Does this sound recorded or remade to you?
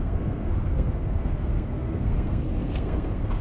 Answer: remade